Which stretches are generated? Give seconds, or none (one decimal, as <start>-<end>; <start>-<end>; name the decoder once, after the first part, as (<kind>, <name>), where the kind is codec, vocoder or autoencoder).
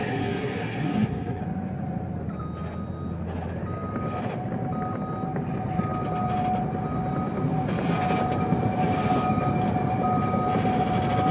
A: 0.0-1.4 (codec, SNAC)